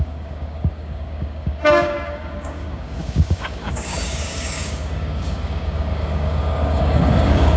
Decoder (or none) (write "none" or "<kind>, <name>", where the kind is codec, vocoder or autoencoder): codec, DAC